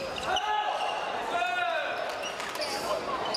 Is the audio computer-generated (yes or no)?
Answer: no